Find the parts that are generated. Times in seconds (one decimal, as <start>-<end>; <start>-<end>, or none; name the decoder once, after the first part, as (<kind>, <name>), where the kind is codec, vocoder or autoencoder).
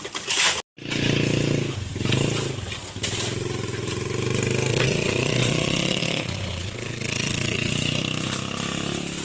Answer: 4.7-7.7 (vocoder, Vocos)